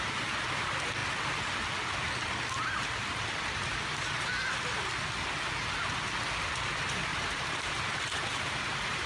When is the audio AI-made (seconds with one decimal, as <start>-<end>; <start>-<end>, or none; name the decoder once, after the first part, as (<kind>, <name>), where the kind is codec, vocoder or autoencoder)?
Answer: 7.1-9.1 (vocoder, BigVGAN v2)